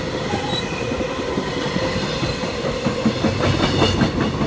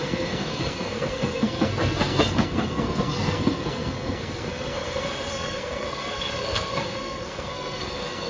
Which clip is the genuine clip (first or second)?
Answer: first